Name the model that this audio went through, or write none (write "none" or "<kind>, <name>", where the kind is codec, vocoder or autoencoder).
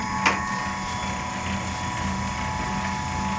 none